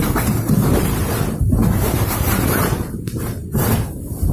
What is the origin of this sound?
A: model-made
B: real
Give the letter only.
A